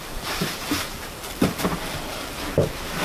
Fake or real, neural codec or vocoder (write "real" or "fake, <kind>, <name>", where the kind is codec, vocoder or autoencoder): fake, vocoder, BigVGAN v2